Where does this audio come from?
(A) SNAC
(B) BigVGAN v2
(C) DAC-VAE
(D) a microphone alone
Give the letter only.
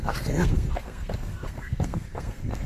A